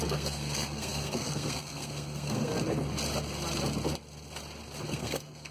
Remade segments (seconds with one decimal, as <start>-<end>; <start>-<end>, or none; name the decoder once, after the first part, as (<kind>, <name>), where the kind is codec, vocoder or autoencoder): 0.0-2.5 (codec, SNAC); 4.9-5.5